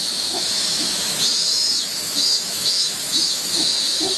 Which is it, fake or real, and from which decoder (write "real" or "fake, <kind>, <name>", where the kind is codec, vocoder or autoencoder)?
fake, autoencoder, DAC-VAE